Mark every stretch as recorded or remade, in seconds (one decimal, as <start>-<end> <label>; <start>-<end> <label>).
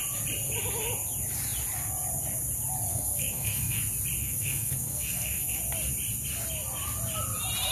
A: 0.0-2.9 recorded; 2.9-3.8 remade; 3.8-4.2 recorded; 4.2-5.6 remade; 5.6-7.7 recorded